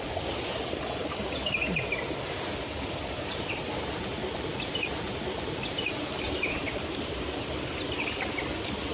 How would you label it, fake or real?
real